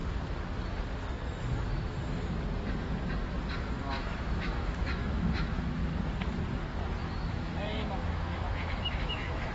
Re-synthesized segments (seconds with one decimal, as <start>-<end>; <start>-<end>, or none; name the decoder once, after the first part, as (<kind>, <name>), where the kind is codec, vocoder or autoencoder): 3.8-5.8 (autoencoder, DAC-VAE); 7.0-9.5